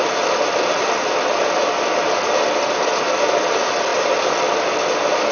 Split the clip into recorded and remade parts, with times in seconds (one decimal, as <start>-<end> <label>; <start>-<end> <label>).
0.0-5.3 recorded